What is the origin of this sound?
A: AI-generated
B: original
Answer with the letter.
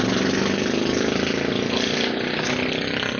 B